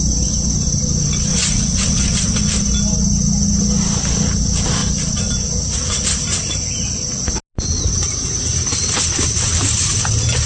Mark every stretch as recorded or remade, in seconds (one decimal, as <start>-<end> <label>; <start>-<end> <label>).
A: 0.0-1.3 recorded; 1.3-2.4 remade; 2.4-10.5 recorded